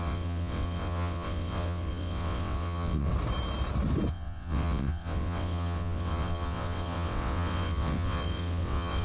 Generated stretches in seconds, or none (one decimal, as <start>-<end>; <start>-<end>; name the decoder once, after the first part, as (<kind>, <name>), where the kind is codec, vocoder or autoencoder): 0.0-3.1 (vocoder, WaveNeXt); 4.1-9.0